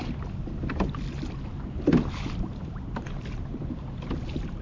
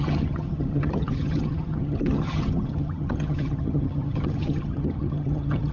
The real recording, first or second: first